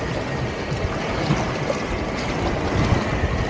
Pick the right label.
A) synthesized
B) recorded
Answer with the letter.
B